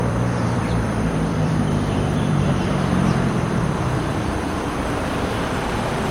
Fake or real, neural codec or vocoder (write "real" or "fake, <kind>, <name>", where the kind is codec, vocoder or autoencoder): fake, vocoder, BigVGAN v2